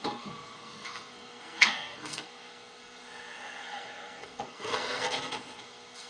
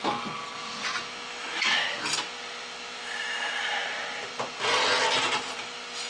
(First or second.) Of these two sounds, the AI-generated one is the first